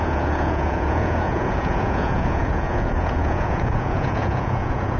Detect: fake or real fake